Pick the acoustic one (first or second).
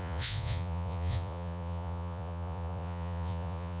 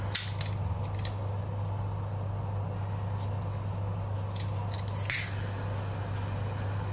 second